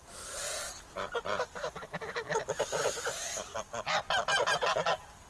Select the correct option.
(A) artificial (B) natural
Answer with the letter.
B